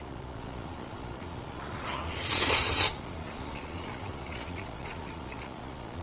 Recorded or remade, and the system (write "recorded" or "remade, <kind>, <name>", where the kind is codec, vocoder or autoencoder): remade, vocoder, Vocos